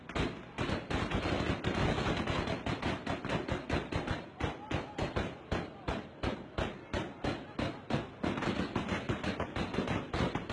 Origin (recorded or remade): recorded